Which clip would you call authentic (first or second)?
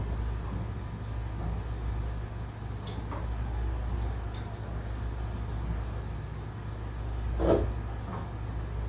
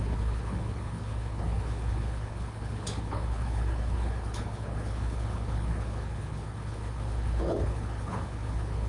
first